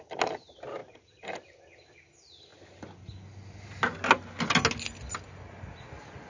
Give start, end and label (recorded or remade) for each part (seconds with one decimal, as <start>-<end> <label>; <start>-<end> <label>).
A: 0.0-0.8 recorded; 0.8-1.6 remade; 1.6-6.3 recorded